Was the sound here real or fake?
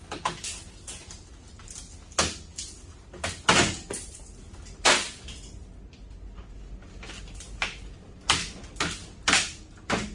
real